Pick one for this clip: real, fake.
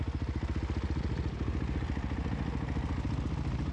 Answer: real